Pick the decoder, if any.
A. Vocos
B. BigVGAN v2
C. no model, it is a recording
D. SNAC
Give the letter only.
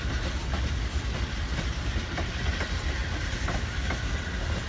C